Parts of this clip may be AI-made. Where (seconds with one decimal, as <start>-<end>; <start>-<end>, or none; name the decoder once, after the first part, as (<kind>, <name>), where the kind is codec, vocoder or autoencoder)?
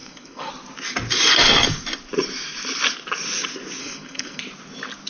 0.0-0.5 (codec, SNAC); 3.8-4.4